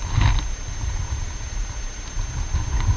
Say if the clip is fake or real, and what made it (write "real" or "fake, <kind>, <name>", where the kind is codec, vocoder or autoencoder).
real